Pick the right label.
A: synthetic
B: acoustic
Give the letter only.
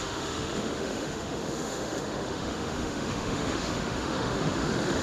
A